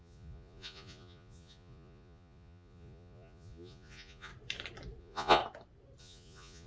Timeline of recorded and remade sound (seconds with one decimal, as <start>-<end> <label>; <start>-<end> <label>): 0.0-4.3 remade; 4.3-5.0 recorded; 5.0-5.4 remade; 5.4-6.0 recorded; 6.0-6.7 remade